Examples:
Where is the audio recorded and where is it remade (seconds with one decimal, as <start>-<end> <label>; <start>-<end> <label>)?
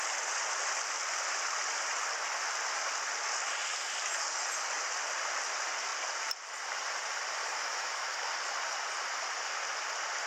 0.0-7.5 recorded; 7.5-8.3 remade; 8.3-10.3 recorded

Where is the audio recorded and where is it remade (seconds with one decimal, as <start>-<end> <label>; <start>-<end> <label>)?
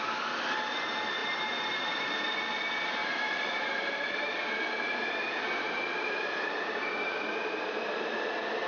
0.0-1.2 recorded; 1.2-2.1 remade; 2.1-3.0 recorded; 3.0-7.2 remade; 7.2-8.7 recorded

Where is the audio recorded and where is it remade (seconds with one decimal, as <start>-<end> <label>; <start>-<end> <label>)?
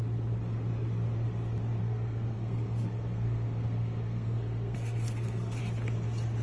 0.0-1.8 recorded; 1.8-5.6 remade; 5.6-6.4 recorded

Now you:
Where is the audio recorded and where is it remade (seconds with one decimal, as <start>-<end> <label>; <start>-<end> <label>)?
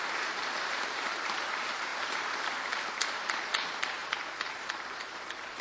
0.0-5.6 remade